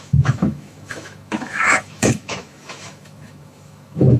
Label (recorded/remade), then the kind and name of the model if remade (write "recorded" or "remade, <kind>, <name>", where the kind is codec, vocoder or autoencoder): remade, autoencoder, DAC-VAE